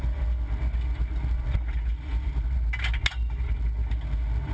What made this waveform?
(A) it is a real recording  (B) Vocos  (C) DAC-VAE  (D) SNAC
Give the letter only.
A